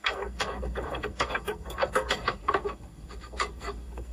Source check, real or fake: fake